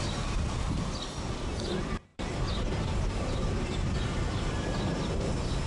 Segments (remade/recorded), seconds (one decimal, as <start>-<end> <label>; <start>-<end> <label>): 0.0-2.1 recorded; 2.1-5.7 remade